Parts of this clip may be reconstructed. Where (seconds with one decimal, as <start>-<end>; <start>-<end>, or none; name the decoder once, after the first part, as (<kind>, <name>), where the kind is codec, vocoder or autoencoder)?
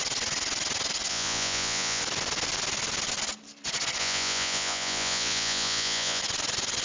1.1-2.0 (vocoder, Vocos); 4.0-6.2